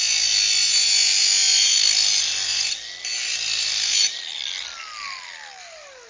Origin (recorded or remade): recorded